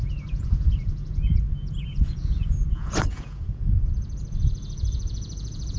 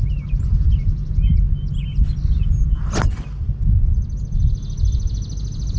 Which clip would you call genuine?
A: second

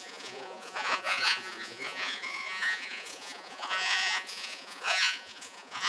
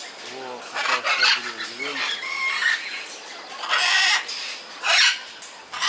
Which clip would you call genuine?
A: second